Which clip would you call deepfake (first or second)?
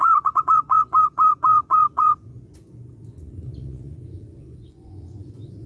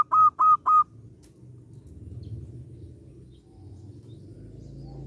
first